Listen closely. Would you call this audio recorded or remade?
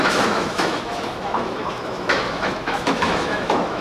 remade